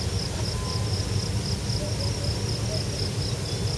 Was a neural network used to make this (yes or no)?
no